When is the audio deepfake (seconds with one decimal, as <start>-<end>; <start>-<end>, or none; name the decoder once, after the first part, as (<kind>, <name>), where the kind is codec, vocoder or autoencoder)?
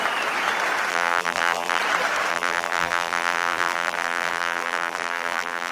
0.9-1.8 (vocoder, BigVGAN v2); 2.3-5.7